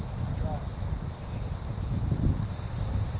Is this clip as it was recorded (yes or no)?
yes